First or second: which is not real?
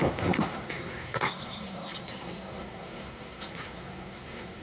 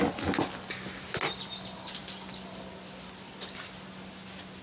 first